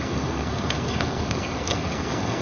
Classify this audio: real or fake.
fake